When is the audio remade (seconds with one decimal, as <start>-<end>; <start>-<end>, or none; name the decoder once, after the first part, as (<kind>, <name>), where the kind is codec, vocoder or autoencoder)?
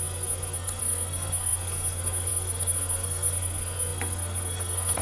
0.0-5.0 (codec, SNAC)